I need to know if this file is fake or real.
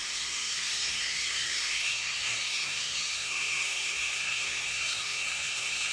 fake